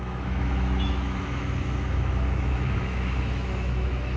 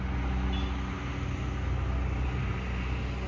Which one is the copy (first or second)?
first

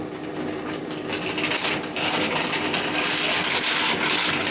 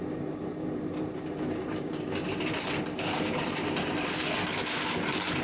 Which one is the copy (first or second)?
second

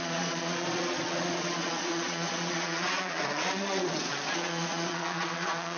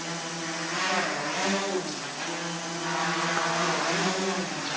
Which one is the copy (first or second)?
first